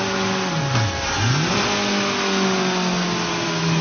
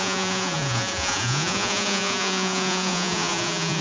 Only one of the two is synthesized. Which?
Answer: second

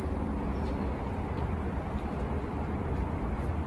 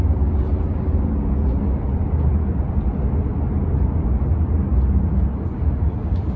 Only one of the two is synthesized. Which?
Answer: first